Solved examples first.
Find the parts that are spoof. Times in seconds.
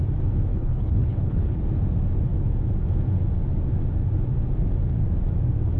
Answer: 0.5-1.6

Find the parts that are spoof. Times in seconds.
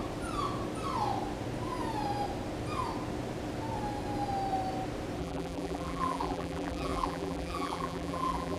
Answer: 5.2-8.6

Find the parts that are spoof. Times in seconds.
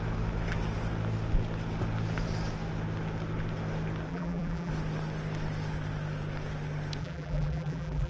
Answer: 4.1-4.7; 7.0-8.1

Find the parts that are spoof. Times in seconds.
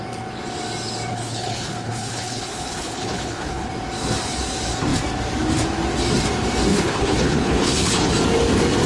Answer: 1.1-3.7; 6.7-8.1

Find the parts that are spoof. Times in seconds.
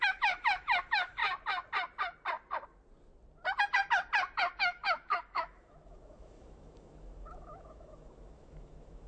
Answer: 0.0-1.2; 4.6-9.1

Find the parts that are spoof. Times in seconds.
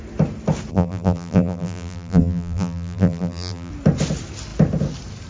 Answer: 0.7-3.7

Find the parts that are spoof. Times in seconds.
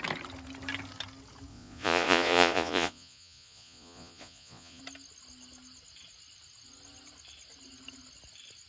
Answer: 1.5-4.8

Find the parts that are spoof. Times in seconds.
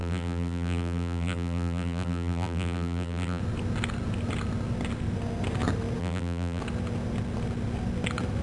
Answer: 0.0-3.4; 6.0-6.6